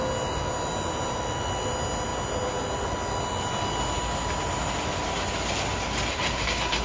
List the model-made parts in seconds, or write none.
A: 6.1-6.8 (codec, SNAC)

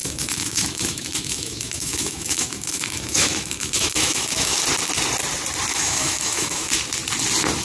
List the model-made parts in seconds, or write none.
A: 0.0-4.6 (autoencoder, DAC-VAE); 5.7-6.7